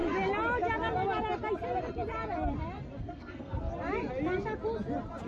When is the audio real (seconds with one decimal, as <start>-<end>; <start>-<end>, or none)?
0.0-3.0; 3.7-5.3

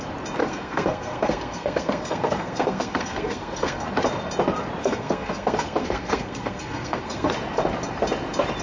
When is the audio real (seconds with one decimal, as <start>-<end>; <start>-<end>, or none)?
0.0-0.4; 3.8-4.8; 7.3-8.6

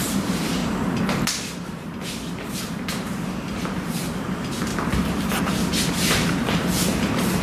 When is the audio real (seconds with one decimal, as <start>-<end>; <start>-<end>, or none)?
0.6-2.6; 4.7-5.9

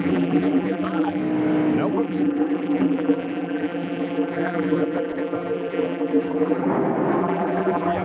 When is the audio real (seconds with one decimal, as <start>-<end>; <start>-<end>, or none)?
1.2-1.9; 6.7-7.2